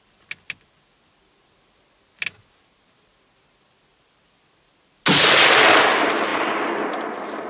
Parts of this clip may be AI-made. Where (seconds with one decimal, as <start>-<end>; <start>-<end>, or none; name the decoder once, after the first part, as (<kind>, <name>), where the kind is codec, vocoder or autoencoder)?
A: none